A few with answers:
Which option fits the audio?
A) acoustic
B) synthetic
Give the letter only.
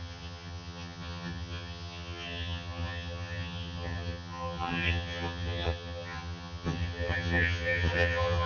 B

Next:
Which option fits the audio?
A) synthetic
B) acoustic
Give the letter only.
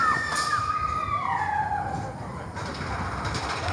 B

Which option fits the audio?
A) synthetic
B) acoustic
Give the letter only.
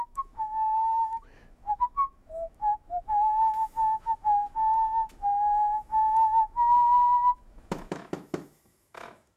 A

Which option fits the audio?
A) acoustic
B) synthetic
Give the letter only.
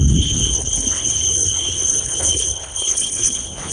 B